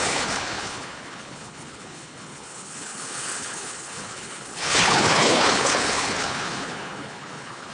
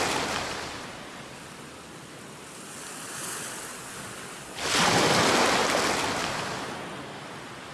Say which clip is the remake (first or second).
first